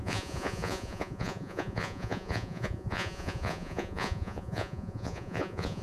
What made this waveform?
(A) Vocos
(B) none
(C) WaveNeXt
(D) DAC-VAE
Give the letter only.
A